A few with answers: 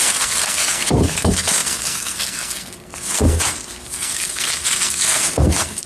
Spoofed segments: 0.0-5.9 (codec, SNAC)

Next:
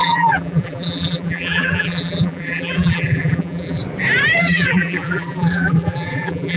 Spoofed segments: 0.0-3.8 (vocoder, BigVGAN v2); 4.4-6.6

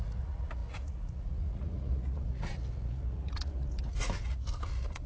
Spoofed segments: 0.0-5.1 (vocoder, Vocos)

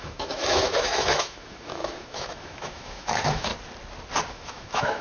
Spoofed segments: 0.0-3.5 (autoencoder, DAC-VAE); 4.3-5.0